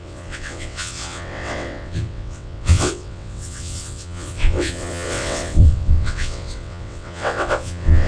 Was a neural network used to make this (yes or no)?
yes